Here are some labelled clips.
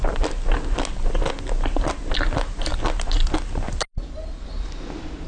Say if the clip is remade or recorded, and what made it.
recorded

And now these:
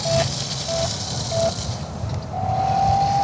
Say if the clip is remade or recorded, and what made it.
recorded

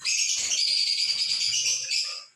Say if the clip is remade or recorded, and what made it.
remade, vocoder, Vocos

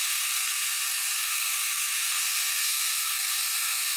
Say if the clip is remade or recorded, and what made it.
remade, codec, SNAC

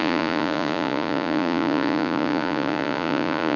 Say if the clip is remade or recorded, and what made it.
remade, vocoder, Vocos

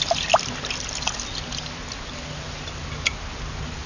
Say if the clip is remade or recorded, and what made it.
recorded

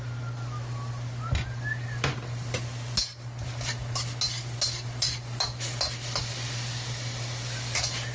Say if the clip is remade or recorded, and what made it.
recorded